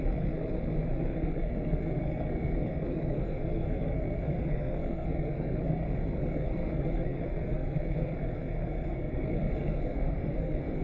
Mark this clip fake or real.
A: fake